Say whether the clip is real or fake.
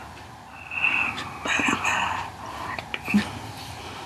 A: real